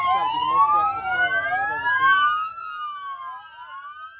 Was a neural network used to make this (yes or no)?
no